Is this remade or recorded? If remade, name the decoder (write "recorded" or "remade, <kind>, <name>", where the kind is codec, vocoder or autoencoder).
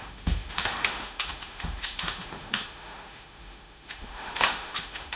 remade, autoencoder, DAC-VAE